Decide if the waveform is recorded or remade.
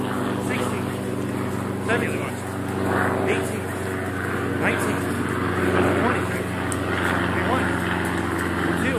recorded